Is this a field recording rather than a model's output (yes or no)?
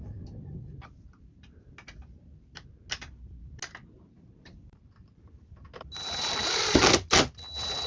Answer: yes